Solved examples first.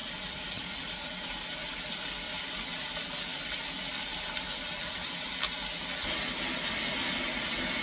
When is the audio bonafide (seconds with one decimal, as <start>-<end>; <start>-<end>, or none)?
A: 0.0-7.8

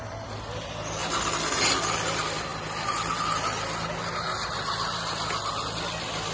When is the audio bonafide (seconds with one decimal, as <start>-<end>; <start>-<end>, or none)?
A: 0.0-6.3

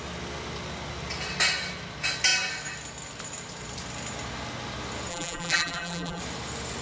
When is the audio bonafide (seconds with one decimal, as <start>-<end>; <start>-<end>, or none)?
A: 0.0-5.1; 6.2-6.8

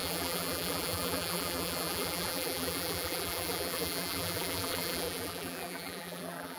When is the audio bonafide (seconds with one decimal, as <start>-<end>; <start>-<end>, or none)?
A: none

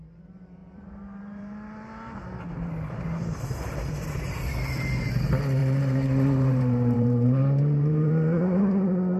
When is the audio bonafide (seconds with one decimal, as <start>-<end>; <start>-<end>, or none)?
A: 0.0-0.6; 2.4-5.6; 8.6-9.2

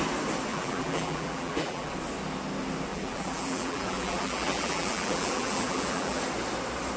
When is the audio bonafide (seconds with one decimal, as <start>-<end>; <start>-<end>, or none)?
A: 0.0-0.5; 1.9-2.9; 6.2-7.0

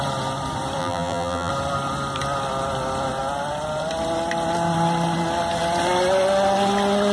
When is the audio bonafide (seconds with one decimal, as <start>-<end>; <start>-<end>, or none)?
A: 0.0-0.8; 1.5-7.1